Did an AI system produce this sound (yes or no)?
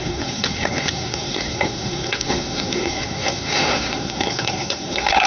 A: yes